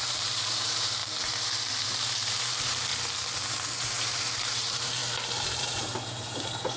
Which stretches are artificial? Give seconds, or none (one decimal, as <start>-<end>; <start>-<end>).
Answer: 0.0-1.0; 1.8-2.9; 3.5-5.0; 5.5-6.8